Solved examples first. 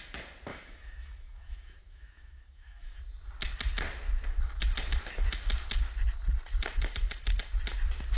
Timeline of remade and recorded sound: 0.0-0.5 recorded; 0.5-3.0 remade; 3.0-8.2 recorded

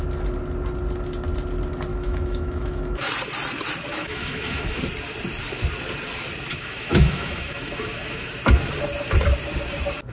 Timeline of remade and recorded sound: 0.0-1.9 recorded; 1.9-3.1 remade; 3.1-3.9 recorded; 3.9-4.8 remade; 4.8-6.5 recorded; 6.5-8.3 remade; 8.3-10.1 recorded

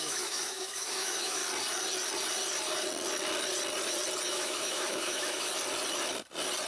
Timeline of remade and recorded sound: 0.0-1.4 remade; 1.4-4.3 recorded; 4.3-5.5 remade; 5.5-6.7 recorded

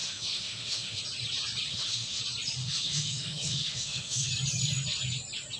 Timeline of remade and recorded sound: 0.0-1.0 remade; 1.0-1.7 recorded; 1.7-2.2 remade; 2.2-2.6 recorded; 2.6-4.3 remade; 4.3-5.6 recorded

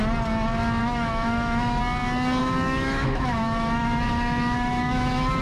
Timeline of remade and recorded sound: 0.0-0.8 recorded; 0.8-1.8 remade; 1.8-2.4 recorded; 2.4-5.4 remade

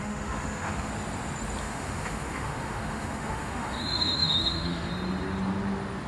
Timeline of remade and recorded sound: 0.0-0.9 remade; 0.9-1.6 recorded; 1.6-4.9 remade; 4.9-6.1 recorded